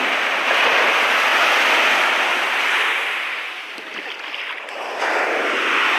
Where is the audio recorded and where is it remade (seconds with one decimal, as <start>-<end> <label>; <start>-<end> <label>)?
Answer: 0.0-6.0 recorded